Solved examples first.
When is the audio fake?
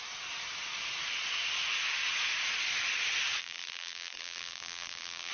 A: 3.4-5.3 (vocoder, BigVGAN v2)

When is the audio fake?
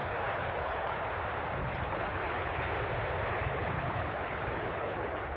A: 0.0-1.1 (codec, HILCodec); 1.6-2.7; 3.3-5.4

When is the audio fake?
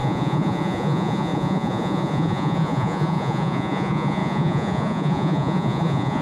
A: 0.0-6.2 (vocoder, Vocos)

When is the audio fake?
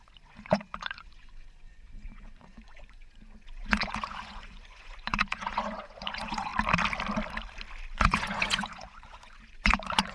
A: 0.0-6.5 (vocoder, Vocos); 7.9-10.1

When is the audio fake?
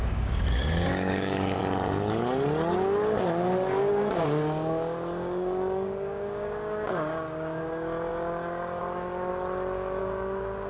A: 0.0-1.6 (codec, DAC); 3.8-9.3; 10.0-10.7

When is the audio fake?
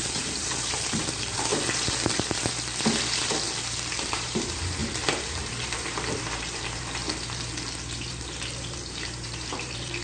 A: 0.0-1.5 (vocoder, BigVGAN v2); 4.1-7.0; 8.1-10.0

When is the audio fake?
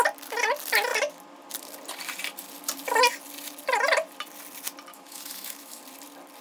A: 4.9-5.8 (autoencoder, DAC-VAE)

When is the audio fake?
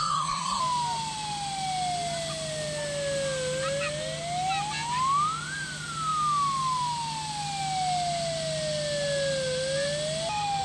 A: 0.0-0.6 (codec, SNAC)